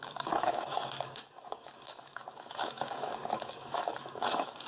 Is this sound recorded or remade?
remade